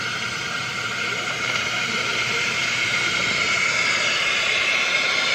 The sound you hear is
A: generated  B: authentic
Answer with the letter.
A